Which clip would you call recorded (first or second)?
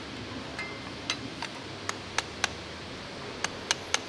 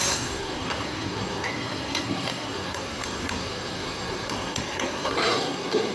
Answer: first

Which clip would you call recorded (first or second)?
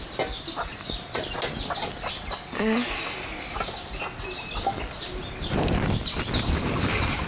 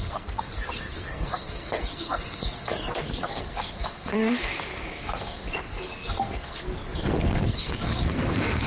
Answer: first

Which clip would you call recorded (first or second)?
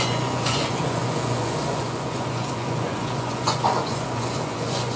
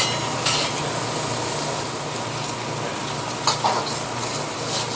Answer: second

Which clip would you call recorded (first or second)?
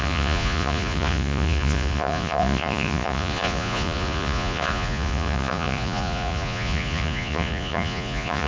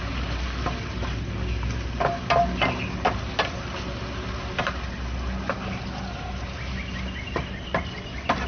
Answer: second